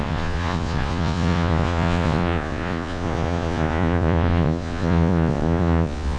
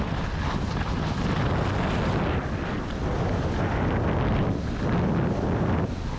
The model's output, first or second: first